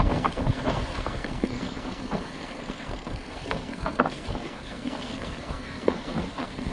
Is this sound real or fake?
fake